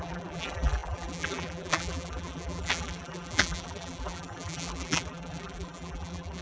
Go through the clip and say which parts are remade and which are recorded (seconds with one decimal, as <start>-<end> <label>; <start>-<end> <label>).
0.0-6.4 remade